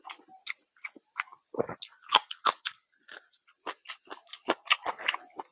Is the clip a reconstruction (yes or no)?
no